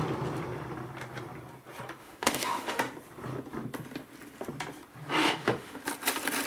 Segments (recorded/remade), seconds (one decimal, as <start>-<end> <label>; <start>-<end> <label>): 0.0-2.0 recorded; 2.0-2.8 remade; 2.8-5.2 recorded; 5.2-5.8 remade; 5.8-6.5 recorded